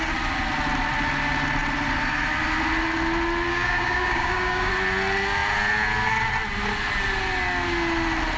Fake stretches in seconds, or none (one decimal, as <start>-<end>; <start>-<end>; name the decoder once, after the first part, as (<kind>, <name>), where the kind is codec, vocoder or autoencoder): 3.5-4.7 (codec, DAC)